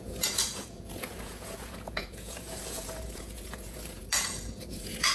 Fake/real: fake